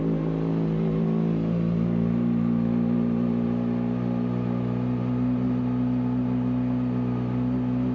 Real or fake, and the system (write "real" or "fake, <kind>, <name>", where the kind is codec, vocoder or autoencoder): real